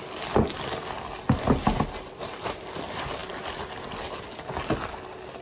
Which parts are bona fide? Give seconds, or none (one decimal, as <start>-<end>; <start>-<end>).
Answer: 0.0-5.4